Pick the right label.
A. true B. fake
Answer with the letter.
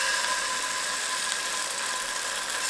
A